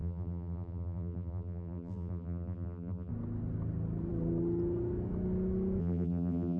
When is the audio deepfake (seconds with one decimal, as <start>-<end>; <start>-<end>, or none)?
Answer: 0.0-3.1; 5.8-6.6